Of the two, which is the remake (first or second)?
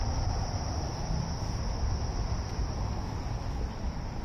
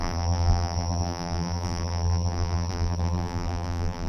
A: second